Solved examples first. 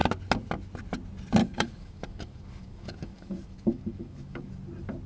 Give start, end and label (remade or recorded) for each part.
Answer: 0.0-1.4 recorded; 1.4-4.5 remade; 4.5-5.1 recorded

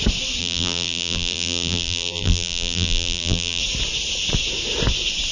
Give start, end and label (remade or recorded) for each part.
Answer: 0.0-0.4 recorded; 0.4-3.6 remade; 3.6-5.3 recorded

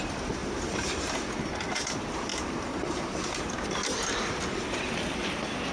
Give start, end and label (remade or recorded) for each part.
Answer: 0.0-0.4 recorded; 0.4-1.1 remade; 1.1-2.3 recorded; 2.3-3.3 remade; 3.3-5.7 recorded

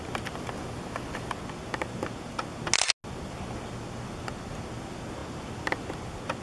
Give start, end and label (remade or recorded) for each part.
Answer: 0.0-6.4 recorded

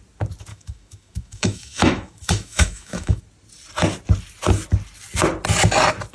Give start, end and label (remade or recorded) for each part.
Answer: 0.0-0.5 recorded; 0.5-3.2 remade; 3.2-6.1 recorded

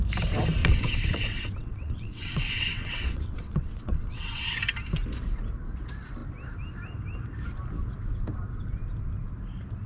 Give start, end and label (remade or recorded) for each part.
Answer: 0.0-0.6 recorded; 0.6-4.6 remade; 4.6-9.9 recorded

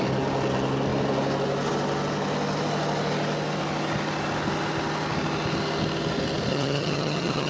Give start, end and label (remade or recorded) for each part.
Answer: 0.0-6.5 recorded; 6.5-7.5 remade

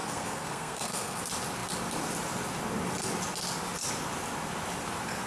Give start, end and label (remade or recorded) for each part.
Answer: 0.0-1.2 remade; 1.2-5.3 recorded